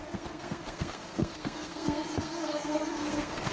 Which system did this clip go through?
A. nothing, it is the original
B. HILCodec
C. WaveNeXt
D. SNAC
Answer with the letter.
D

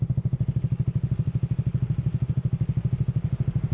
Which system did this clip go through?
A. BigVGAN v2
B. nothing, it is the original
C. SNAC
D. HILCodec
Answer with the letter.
B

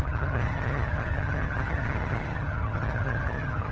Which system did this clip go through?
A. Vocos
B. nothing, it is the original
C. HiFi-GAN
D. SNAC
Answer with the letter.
C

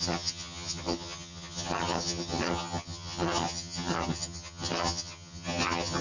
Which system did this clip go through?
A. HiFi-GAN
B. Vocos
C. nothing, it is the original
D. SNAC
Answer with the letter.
A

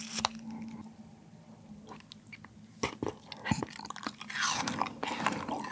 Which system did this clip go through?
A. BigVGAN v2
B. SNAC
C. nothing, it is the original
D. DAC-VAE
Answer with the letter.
C